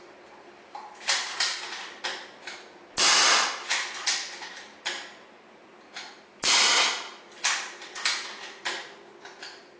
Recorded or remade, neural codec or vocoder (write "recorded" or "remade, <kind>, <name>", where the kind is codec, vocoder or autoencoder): recorded